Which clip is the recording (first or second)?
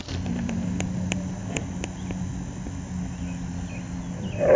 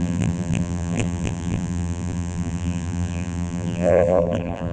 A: first